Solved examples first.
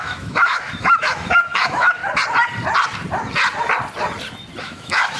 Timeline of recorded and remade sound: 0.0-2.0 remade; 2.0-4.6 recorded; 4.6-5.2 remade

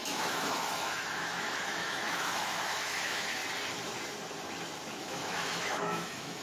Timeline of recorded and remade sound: 0.0-3.4 remade; 3.4-5.0 recorded; 5.0-6.4 remade